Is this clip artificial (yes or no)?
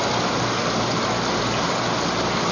no